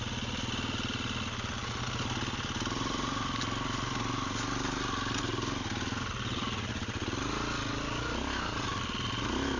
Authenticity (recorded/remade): recorded